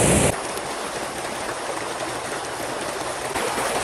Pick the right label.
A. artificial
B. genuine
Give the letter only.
B